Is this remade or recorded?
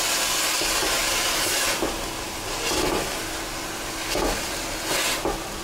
recorded